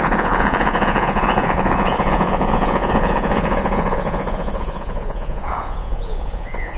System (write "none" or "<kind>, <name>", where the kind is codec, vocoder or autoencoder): vocoder, Vocos